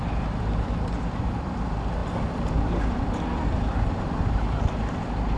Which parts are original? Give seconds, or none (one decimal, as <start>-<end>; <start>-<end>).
none